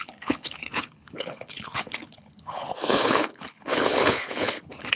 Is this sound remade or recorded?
remade